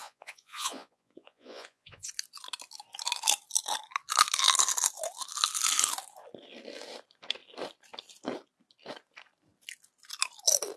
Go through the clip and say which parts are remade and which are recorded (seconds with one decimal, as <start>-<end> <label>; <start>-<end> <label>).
0.0-2.1 remade; 2.1-10.8 recorded